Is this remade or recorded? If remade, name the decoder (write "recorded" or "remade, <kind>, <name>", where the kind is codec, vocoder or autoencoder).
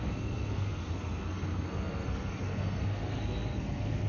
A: remade, codec, SNAC